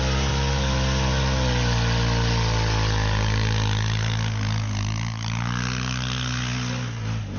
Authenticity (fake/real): real